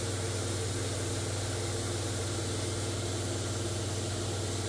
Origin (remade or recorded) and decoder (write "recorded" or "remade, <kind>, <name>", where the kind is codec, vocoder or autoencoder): recorded